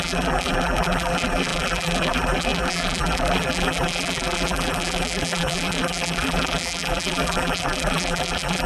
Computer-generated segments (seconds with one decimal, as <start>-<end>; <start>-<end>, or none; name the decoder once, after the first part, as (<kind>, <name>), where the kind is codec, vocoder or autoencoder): 0.0-8.7 (vocoder, BigVGAN v2)